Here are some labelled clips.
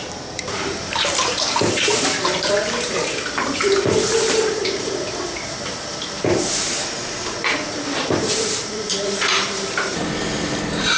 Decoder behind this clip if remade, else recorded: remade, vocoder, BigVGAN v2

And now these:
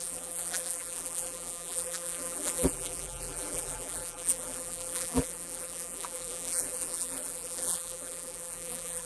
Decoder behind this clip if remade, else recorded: remade, vocoder, BigVGAN v2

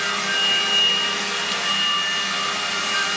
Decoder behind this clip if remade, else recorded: recorded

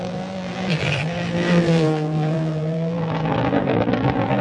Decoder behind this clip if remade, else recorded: remade, vocoder, BigVGAN v2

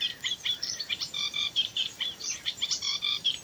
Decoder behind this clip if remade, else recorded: remade, vocoder, BigVGAN v2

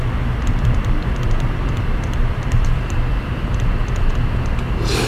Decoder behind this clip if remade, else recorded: remade, vocoder, BigVGAN v2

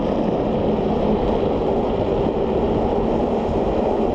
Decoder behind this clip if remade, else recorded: recorded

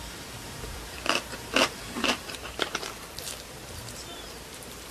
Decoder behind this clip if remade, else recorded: remade, vocoder, BigVGAN v2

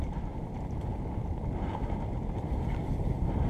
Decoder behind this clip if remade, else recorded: recorded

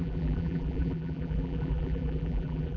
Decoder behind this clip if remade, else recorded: remade, vocoder, BigVGAN v2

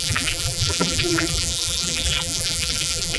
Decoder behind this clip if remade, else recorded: remade, vocoder, BigVGAN v2